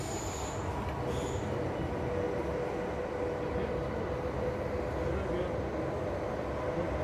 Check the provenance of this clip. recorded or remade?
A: recorded